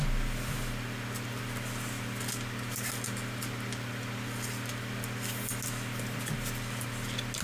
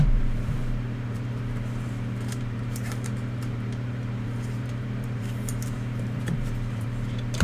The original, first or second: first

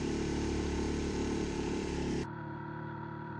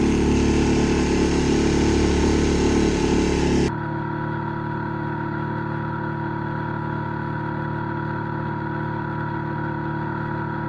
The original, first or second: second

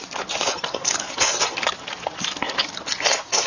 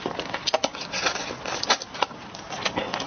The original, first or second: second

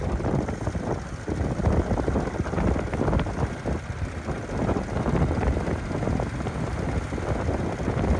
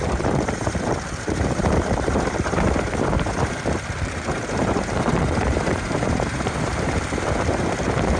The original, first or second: first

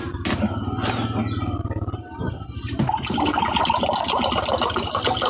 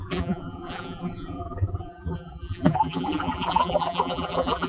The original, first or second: first